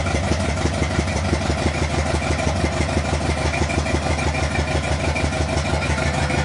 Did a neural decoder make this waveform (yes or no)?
no